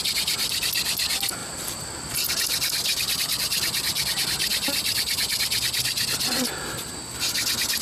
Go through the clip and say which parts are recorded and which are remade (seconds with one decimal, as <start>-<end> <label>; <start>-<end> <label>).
0.0-1.4 recorded; 1.4-2.3 remade; 2.3-2.9 recorded; 2.9-4.1 remade; 4.1-4.5 recorded; 4.5-5.6 remade; 5.6-7.8 recorded